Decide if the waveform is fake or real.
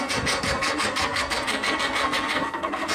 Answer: fake